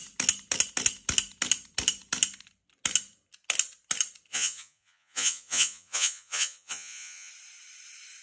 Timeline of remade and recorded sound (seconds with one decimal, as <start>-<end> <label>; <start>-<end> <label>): 0.0-4.3 recorded; 4.3-7.3 remade; 7.3-8.2 recorded

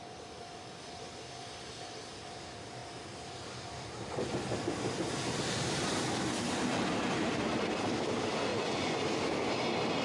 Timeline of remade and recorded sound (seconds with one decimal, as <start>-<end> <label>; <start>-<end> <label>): 0.0-8.5 recorded; 8.5-9.0 remade; 9.0-10.0 recorded